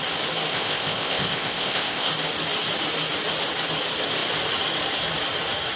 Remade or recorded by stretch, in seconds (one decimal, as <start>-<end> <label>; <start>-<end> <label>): 0.0-0.5 recorded; 0.5-2.1 remade; 2.1-5.8 recorded